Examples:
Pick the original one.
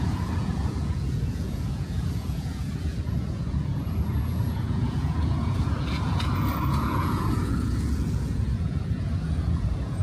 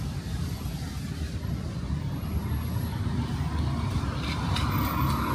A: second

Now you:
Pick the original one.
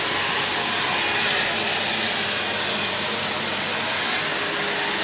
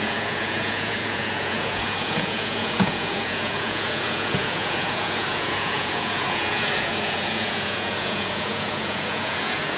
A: first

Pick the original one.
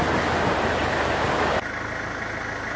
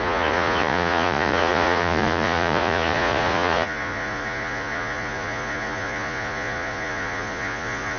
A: first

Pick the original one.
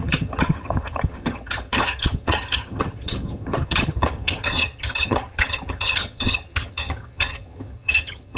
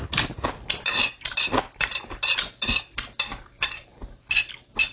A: second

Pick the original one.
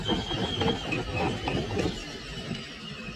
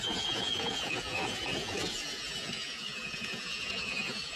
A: first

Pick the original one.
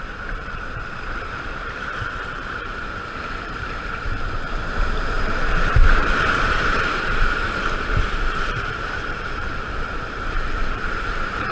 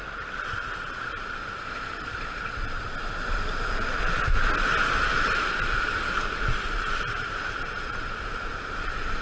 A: second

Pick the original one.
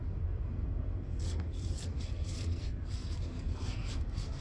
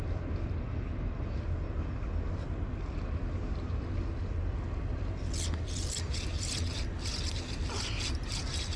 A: second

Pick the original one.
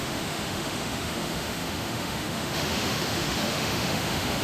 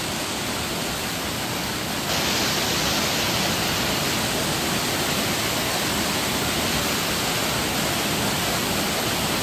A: second